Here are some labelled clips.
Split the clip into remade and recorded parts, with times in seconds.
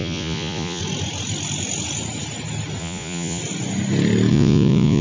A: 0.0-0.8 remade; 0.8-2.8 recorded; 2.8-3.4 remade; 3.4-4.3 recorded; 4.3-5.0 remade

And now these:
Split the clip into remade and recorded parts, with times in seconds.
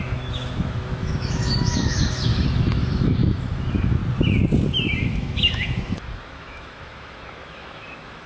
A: 0.0-4.0 remade; 4.0-5.0 recorded; 5.0-8.3 remade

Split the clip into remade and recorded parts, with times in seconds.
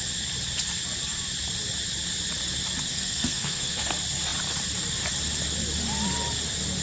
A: 0.0-2.9 recorded; 2.9-3.9 remade; 3.9-6.8 recorded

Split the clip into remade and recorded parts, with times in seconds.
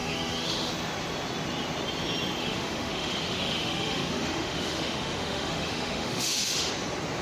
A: 0.0-0.7 remade; 0.7-2.4 recorded; 2.4-6.7 remade; 6.7-7.2 recorded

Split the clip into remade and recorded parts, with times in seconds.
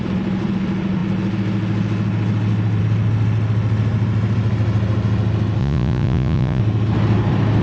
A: 0.0-5.6 recorded; 5.6-6.6 remade; 6.6-7.6 recorded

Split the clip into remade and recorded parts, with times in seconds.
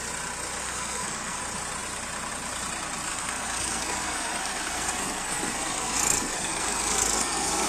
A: 0.0-0.6 recorded; 0.6-1.4 remade; 1.4-3.1 recorded; 3.1-7.7 remade